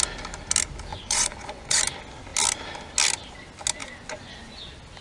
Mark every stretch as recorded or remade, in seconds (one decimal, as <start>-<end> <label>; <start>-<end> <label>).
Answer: 0.0-0.9 recorded; 0.9-1.8 remade; 1.8-3.8 recorded; 3.8-4.6 remade; 4.6-5.0 recorded